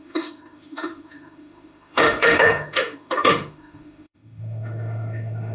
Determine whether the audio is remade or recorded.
remade